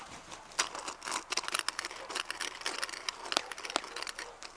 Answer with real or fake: real